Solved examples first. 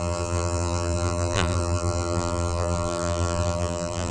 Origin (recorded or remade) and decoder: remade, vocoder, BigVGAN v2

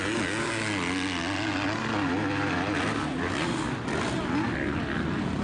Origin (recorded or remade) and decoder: recorded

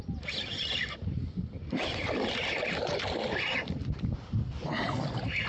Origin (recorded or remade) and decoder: recorded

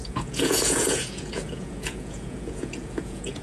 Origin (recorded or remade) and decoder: remade, vocoder, Vocos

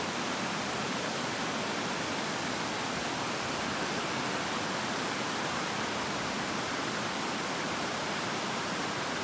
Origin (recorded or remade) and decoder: remade, vocoder, BigVGAN v2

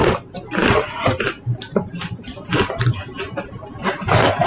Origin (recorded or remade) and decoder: remade, vocoder, BigVGAN v2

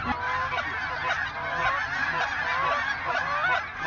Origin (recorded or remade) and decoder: recorded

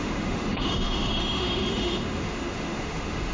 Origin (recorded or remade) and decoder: remade, autoencoder, DAC-VAE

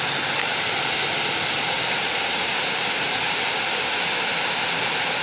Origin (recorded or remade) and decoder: recorded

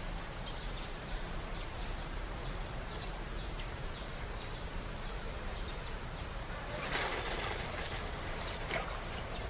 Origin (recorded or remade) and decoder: remade, vocoder, BigVGAN v2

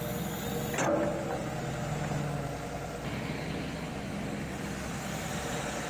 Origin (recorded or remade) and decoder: recorded